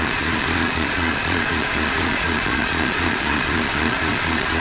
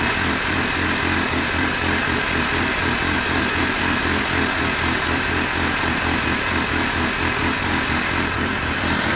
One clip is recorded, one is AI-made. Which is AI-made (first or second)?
first